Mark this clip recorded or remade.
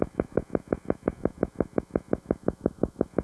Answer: remade